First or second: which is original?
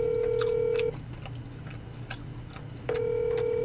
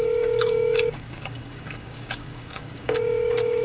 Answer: first